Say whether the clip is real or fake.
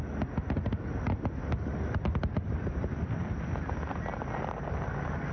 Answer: real